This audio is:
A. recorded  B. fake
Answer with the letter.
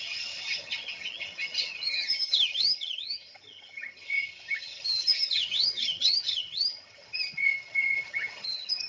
B